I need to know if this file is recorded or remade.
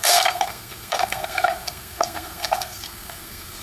remade